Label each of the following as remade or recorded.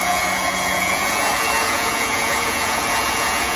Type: remade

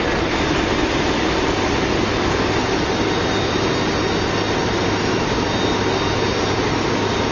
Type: recorded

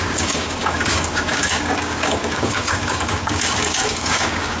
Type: remade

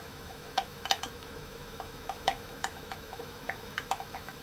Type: remade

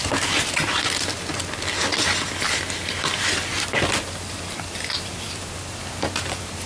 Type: recorded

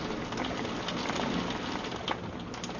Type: recorded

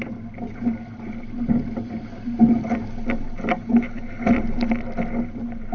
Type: recorded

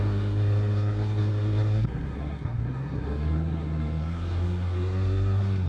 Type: remade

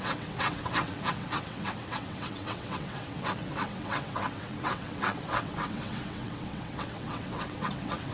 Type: remade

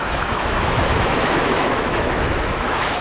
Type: remade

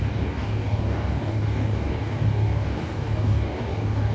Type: remade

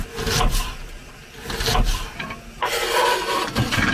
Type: recorded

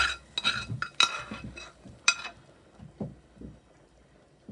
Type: recorded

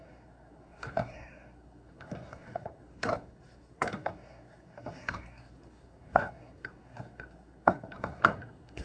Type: remade